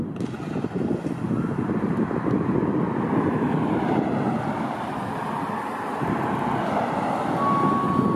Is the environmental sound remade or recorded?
recorded